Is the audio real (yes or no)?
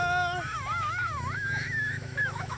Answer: no